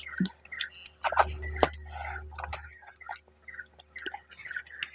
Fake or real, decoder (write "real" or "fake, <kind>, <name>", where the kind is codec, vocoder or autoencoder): real